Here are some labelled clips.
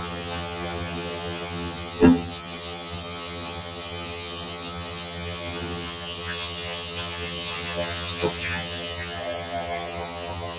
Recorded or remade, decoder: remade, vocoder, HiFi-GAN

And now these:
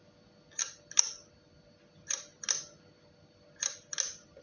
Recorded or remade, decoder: recorded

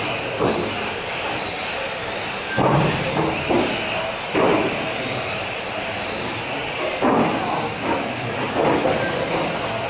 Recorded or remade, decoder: recorded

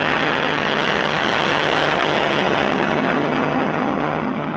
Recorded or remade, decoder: remade, vocoder, HiFi-GAN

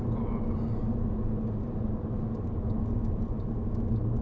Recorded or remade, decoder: recorded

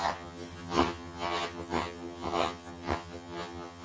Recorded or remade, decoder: remade, vocoder, HiFi-GAN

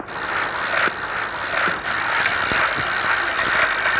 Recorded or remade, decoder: recorded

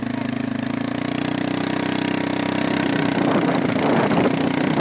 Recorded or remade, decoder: recorded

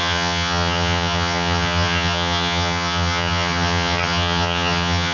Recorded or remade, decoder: remade, vocoder, HiFi-GAN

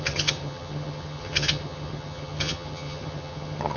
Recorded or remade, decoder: remade, vocoder, HiFi-GAN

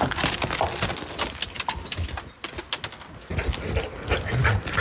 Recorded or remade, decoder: recorded